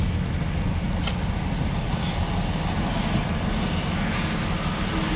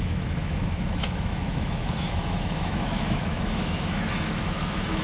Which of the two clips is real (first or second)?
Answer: first